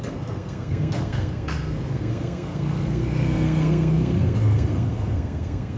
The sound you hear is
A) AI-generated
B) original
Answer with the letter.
A